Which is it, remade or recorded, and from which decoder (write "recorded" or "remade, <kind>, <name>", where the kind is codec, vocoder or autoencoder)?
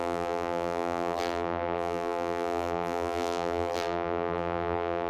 remade, vocoder, BigVGAN v2